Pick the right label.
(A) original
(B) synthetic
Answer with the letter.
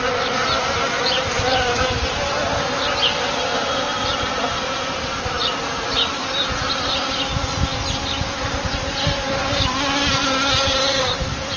A